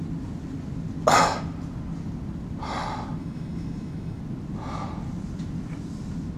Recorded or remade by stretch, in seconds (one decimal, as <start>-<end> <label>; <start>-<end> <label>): 0.0-3.2 recorded; 3.2-4.2 remade; 4.2-6.4 recorded